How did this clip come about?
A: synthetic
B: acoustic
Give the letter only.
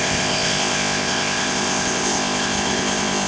A